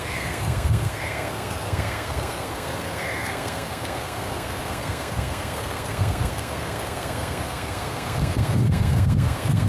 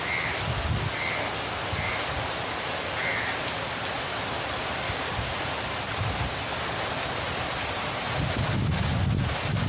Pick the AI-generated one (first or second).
first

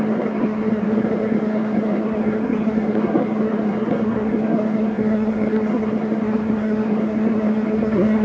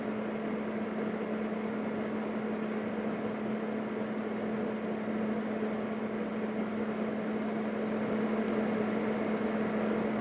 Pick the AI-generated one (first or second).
first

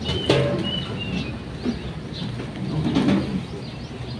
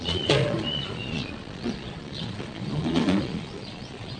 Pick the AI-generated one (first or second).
second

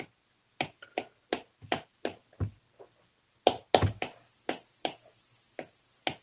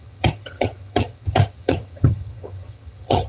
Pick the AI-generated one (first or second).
second